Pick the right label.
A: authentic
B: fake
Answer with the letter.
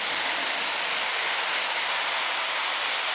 A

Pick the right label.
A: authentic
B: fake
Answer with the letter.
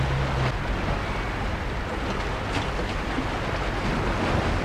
A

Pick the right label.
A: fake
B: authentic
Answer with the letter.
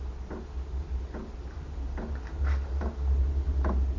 B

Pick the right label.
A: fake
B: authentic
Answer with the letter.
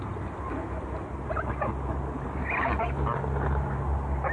B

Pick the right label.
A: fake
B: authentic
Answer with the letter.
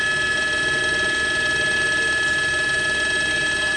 B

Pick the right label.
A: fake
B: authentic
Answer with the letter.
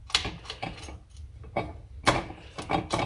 B